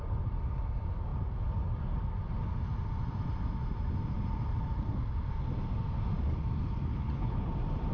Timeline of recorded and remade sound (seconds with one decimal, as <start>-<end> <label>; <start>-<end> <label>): 0.0-6.9 recorded; 6.9-7.5 remade; 7.5-7.9 recorded